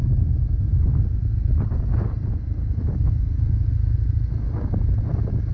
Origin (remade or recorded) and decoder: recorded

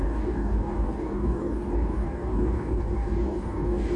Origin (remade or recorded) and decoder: remade, codec, DAC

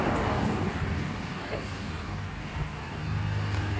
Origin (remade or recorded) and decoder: remade, codec, DAC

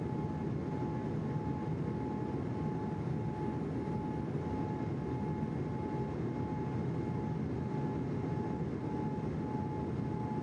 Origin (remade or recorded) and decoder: recorded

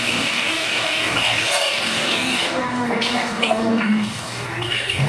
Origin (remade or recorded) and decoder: remade, codec, DAC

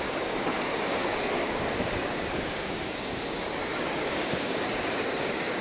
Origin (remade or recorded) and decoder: remade, codec, DAC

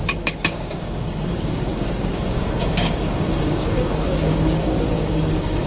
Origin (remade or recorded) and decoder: remade, codec, DAC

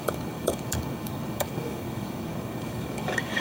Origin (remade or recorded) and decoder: remade, codec, DAC